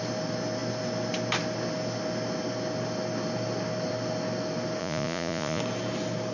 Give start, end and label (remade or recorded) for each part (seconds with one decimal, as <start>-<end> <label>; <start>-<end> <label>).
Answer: 0.0-4.8 recorded; 4.8-5.6 remade; 5.6-6.3 recorded